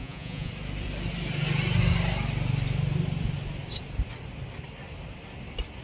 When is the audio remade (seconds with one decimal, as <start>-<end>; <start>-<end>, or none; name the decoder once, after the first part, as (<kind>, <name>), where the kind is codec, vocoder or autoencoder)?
0.0-0.5 (vocoder, Vocos)